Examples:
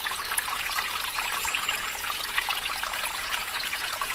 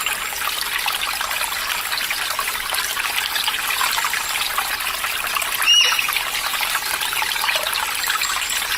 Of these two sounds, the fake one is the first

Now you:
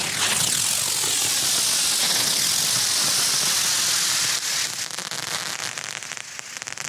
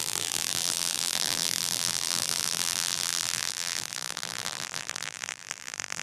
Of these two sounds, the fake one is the second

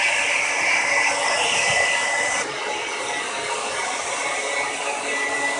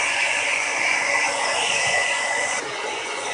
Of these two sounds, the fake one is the second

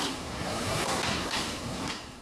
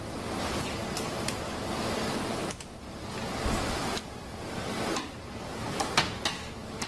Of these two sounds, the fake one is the first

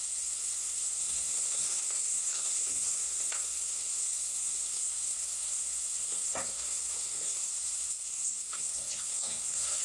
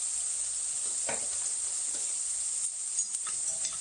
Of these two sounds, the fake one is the first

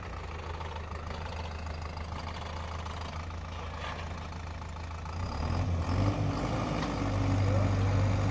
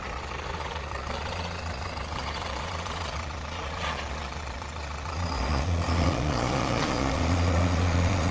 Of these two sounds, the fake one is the second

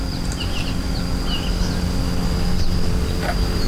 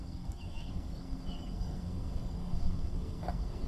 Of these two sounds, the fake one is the second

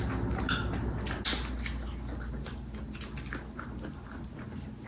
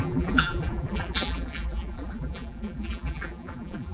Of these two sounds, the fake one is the second